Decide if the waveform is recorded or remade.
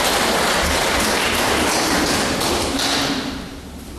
recorded